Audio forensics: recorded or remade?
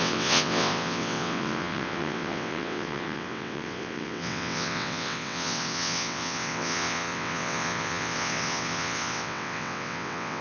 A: remade